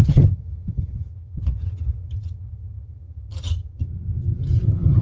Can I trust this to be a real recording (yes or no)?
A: no